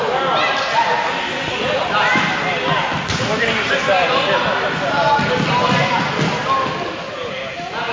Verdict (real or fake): real